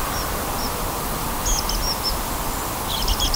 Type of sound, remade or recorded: recorded